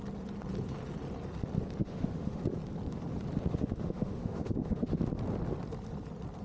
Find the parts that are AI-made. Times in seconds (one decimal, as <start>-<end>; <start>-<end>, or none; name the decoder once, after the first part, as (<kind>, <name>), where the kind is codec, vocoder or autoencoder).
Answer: 1.8-2.4 (autoencoder, DAC-VAE); 3.5-5.0